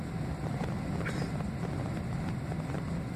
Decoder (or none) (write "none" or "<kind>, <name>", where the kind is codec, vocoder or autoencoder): none